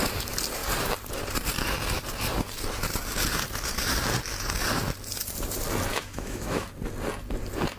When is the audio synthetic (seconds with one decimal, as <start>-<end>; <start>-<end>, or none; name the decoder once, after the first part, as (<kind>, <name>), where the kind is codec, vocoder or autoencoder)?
5.9-6.7 (autoencoder, DAC-VAE)